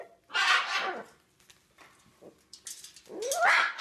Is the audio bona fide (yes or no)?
yes